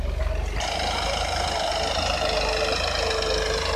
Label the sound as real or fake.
real